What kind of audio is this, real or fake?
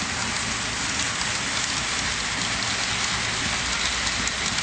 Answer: real